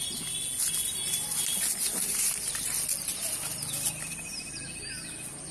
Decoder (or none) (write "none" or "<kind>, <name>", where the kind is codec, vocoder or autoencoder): none